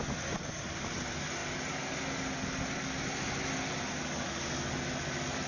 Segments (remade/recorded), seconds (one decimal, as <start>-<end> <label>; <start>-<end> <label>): 0.0-5.5 recorded